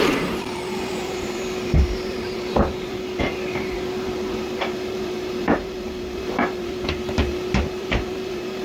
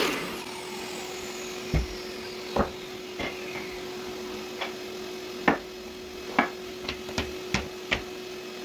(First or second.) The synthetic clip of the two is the first